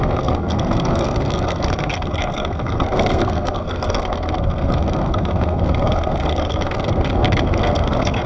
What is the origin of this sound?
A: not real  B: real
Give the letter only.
A